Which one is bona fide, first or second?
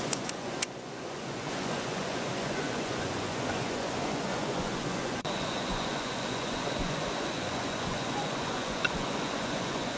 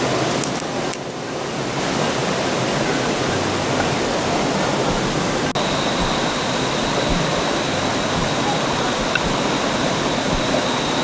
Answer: second